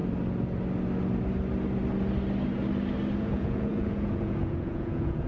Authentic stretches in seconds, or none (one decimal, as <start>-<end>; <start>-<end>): 0.0-3.2